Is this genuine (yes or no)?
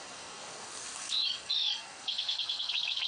no